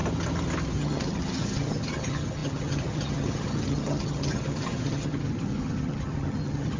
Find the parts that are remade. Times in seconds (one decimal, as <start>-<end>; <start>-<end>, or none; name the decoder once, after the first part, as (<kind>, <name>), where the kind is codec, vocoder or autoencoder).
0.7-6.8 (vocoder, HiFi-GAN)

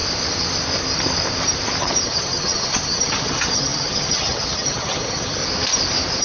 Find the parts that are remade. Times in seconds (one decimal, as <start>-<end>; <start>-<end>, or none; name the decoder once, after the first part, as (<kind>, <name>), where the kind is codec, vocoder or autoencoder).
1.8-5.4 (vocoder, HiFi-GAN)